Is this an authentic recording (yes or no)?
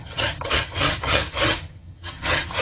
no